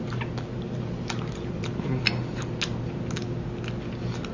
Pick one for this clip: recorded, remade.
recorded